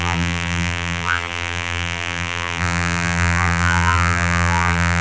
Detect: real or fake fake